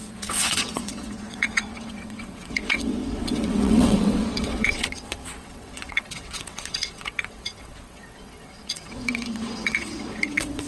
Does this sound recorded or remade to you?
remade